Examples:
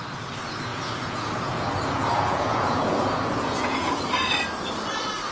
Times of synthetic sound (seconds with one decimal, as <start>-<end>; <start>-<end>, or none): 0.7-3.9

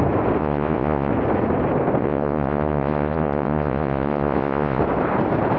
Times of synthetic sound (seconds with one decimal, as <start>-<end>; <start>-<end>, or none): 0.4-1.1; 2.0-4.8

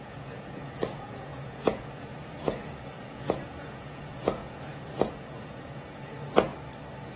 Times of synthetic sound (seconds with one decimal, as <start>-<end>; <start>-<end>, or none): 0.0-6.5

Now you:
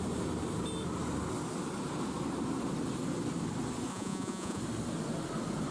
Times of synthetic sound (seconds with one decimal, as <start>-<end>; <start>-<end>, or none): 3.9-4.6

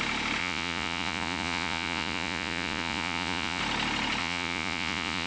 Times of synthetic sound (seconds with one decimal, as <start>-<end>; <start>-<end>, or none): 0.4-3.6; 4.2-5.3

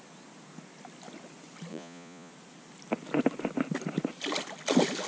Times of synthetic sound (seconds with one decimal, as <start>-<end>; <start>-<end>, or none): 1.7-2.3

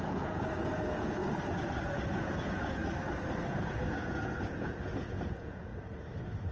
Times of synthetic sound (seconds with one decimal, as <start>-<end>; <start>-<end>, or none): 0.0-1.2; 1.8-2.8; 3.4-5.7

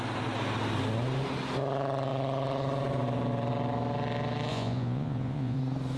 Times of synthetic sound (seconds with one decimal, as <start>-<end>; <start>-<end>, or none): 4.5-5.6